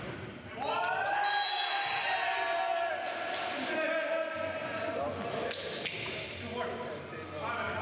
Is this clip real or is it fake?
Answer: real